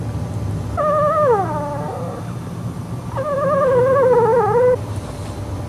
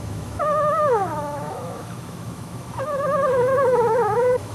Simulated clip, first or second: second